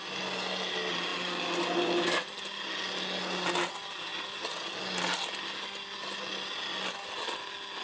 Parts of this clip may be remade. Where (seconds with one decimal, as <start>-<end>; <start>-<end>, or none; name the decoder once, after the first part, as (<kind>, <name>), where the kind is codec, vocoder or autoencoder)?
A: none